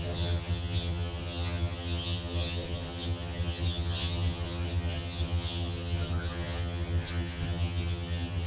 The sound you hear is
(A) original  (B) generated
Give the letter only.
B